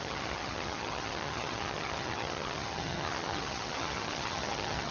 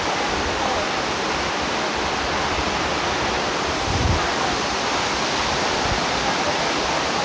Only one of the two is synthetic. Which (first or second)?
first